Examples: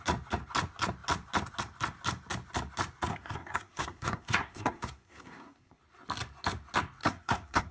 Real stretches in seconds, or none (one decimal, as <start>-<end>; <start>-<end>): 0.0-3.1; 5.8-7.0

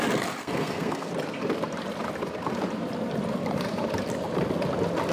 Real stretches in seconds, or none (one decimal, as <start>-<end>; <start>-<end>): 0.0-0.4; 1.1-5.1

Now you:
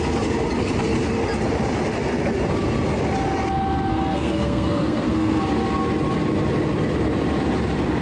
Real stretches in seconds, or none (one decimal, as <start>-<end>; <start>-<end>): 0.0-3.9; 5.4-8.0